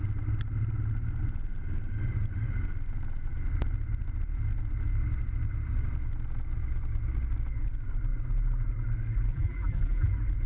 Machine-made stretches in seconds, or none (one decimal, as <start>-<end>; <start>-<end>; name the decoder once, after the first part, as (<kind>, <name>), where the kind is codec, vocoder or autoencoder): 9.3-10.1 (vocoder, BigVGAN v2)